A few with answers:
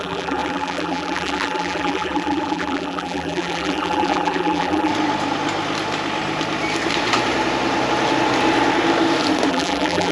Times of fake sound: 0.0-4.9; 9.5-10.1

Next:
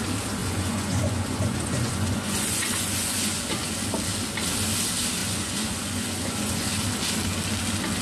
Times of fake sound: 0.4-3.7; 5.2-6.7

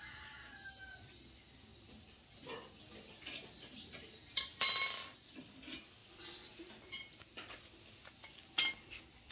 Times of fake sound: none

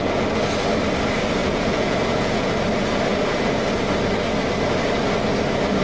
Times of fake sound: 1.4-2.5

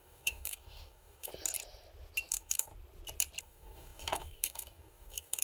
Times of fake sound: 0.0-1.3; 2.3-2.7; 3.4-5.4

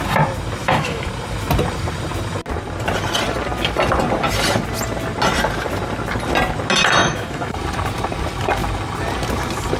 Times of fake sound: 0.6-1.1; 7.0-7.6